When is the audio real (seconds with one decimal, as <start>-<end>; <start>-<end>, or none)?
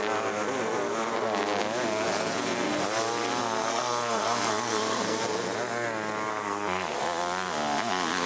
0.0-3.4; 5.2-6.3; 7.0-8.3